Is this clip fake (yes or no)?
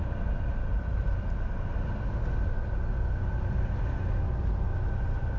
no